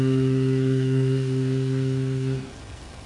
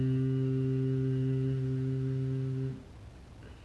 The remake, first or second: first